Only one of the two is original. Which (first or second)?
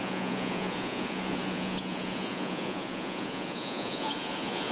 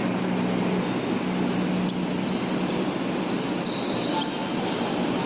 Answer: second